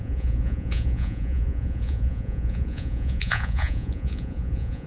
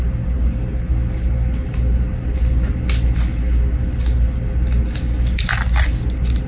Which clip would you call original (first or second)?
second